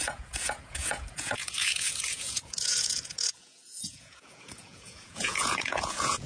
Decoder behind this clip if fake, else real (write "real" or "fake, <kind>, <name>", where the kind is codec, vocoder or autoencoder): fake, vocoder, Vocos